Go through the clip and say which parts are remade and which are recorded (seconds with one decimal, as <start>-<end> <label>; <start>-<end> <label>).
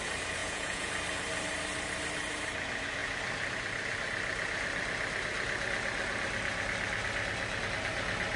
0.0-0.4 recorded; 0.4-0.9 remade; 0.9-8.4 recorded